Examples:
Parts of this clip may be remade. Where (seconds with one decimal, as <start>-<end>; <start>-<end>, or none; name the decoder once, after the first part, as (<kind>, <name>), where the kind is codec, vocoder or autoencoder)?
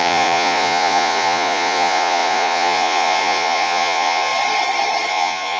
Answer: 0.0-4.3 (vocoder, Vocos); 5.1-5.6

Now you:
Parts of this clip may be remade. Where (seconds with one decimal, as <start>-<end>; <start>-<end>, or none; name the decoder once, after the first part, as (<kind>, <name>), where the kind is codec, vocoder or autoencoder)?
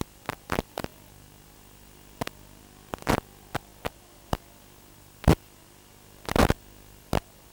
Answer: none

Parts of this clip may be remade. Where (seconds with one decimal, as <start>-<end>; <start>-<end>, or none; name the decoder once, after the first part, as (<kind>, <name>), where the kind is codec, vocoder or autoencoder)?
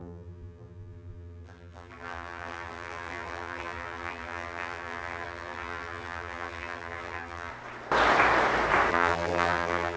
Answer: 0.0-7.5 (vocoder, BigVGAN v2); 8.9-10.0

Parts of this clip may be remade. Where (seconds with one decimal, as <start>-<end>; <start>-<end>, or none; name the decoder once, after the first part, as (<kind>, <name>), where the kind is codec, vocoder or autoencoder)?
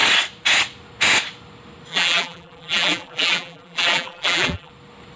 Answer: 1.9-4.7 (vocoder, BigVGAN v2)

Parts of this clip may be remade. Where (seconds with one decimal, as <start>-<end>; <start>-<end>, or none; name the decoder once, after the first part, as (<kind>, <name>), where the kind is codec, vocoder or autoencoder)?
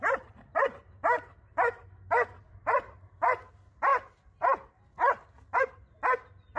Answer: none